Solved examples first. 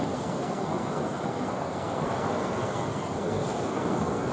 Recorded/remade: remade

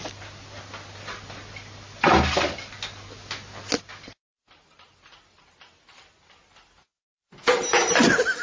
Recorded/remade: recorded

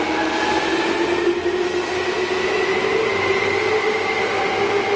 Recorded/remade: recorded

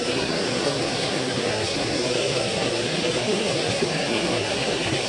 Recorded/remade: remade